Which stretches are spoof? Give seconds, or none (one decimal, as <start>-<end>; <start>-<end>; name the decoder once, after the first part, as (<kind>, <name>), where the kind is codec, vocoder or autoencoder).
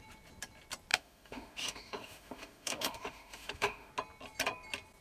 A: 0.9-3.9 (autoencoder, DAC-VAE)